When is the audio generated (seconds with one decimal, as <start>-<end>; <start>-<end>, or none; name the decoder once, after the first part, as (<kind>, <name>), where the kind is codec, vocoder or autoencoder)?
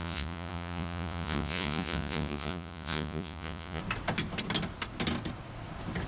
0.0-3.8 (vocoder, Vocos)